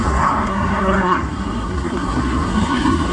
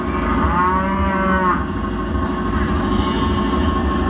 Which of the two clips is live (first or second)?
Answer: second